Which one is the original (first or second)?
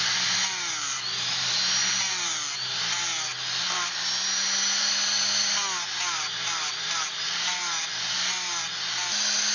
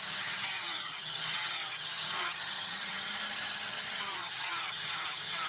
first